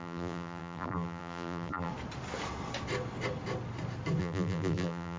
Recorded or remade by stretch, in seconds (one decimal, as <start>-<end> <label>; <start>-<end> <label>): 0.0-1.9 remade; 1.9-4.2 recorded; 4.2-5.2 remade